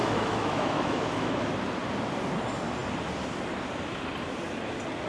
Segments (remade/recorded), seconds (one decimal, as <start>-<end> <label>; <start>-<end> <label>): 0.0-1.5 remade; 1.5-5.1 recorded